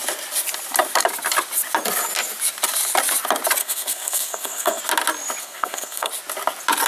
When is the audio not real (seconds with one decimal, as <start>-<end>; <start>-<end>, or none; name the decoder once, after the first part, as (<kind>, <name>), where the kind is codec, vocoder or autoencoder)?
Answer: 3.6-4.8 (codec, SNAC); 5.4-6.1